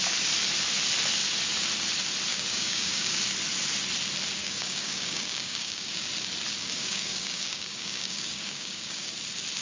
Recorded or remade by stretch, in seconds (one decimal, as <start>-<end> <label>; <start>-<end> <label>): 0.0-2.3 recorded; 2.3-3.2 remade; 3.2-4.4 recorded; 4.4-6.1 remade; 6.1-6.6 recorded; 6.6-9.1 remade; 9.1-9.6 recorded